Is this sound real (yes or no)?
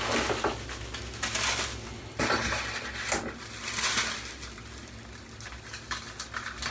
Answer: yes